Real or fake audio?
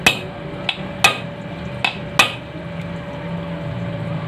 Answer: real